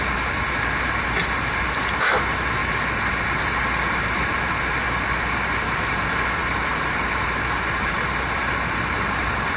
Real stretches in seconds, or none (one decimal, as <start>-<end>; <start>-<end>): 0.0-6.4